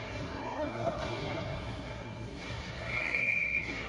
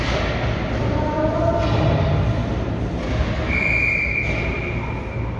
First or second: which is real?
second